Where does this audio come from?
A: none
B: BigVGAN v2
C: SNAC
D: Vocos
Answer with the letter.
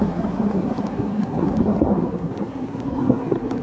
C